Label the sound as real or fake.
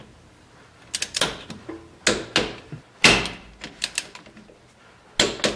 real